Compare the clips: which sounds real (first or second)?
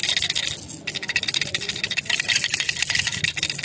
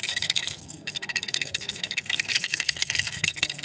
first